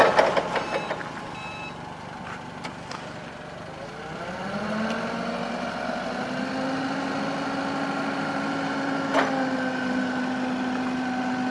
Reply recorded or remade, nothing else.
remade